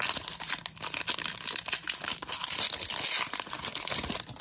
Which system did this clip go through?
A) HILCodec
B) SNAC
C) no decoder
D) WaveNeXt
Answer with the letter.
C